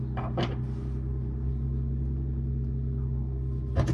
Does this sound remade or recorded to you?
recorded